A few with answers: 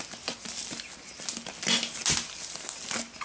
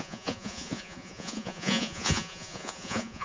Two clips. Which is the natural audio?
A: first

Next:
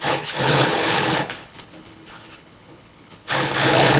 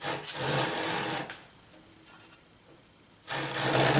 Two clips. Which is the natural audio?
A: second